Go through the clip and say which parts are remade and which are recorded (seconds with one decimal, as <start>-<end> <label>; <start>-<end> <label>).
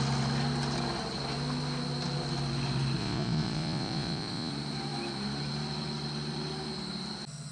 0.0-3.0 recorded; 3.0-4.5 remade; 4.5-7.5 recorded